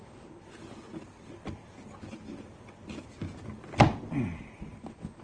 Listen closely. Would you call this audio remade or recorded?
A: recorded